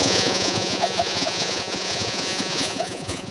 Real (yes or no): no